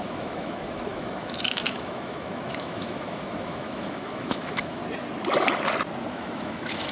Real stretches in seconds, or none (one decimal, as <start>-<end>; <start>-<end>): 4.8-6.1